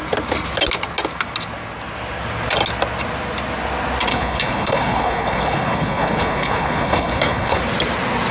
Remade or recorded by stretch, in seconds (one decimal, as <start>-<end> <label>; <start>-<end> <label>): 0.0-4.1 recorded; 4.1-7.6 remade; 7.6-8.3 recorded